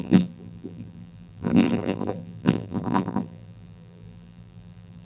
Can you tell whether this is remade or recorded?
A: remade